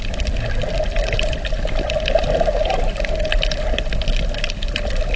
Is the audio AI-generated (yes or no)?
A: no